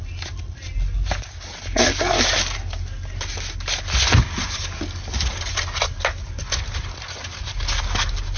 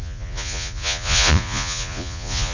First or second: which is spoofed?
second